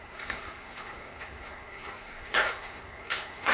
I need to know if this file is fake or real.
fake